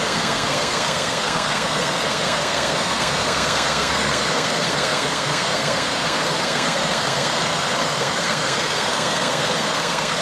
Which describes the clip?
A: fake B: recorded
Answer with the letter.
A